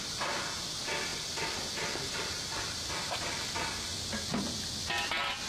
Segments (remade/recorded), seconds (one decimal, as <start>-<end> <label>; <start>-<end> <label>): 0.0-5.5 recorded